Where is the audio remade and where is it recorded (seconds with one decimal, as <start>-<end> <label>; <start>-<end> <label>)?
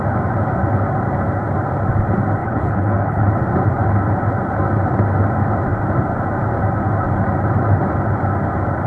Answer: 0.0-2.4 recorded; 2.4-3.3 remade; 3.3-8.9 recorded